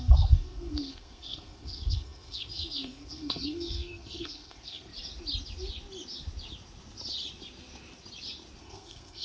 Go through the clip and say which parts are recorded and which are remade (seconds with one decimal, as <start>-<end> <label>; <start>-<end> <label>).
0.0-4.9 remade; 4.9-8.6 recorded; 8.6-9.2 remade